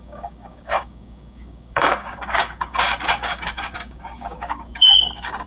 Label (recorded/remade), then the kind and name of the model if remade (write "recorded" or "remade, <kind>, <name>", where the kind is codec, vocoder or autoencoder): remade, codec, DAC